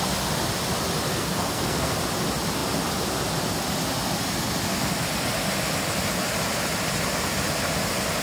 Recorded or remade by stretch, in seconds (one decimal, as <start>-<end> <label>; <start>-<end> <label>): 0.0-1.1 recorded; 1.1-1.9 remade; 1.9-8.2 recorded